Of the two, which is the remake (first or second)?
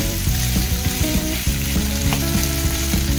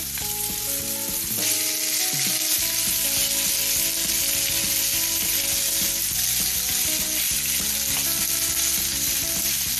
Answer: first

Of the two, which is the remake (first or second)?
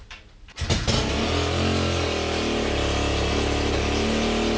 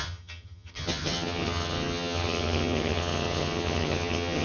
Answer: second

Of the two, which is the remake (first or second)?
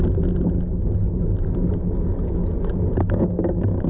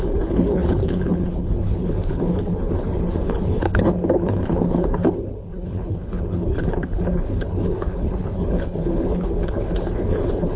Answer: second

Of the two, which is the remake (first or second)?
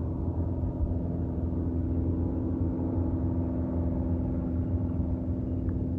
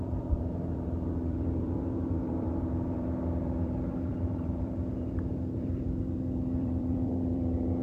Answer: second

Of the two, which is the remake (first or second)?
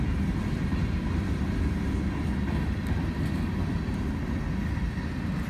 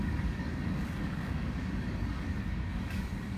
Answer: second